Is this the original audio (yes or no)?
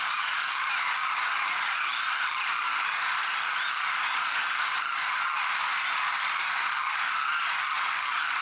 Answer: yes